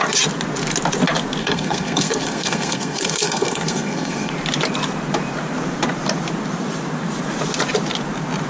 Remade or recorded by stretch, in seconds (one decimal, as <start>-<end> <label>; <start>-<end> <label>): 0.0-1.4 recorded; 1.4-4.3 remade; 4.3-8.5 recorded